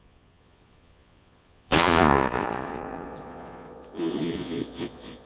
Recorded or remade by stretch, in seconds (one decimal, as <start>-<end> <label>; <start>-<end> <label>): 0.0-5.3 remade